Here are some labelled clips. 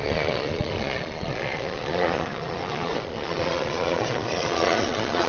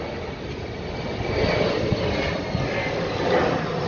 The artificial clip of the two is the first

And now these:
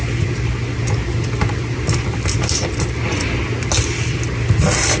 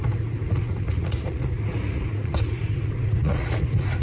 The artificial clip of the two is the second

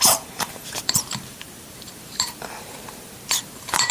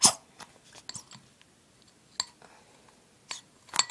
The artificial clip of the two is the first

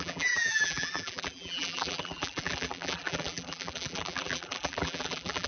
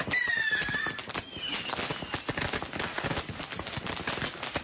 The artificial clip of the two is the first